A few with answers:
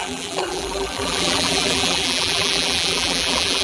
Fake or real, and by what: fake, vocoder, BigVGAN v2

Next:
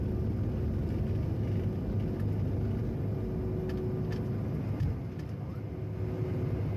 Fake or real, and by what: real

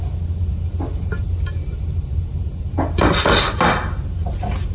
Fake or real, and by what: real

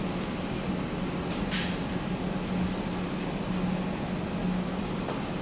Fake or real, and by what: real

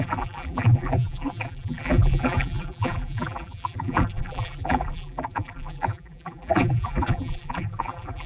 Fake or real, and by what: fake, vocoder, BigVGAN v2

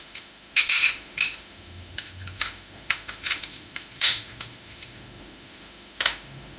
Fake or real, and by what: fake, autoencoder, DAC-VAE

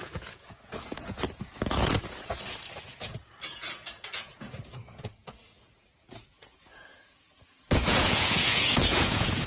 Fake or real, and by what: fake, vocoder, Vocos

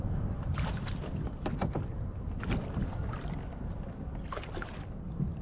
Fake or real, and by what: fake, vocoder, BigVGAN v2